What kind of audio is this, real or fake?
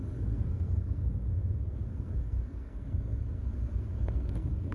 fake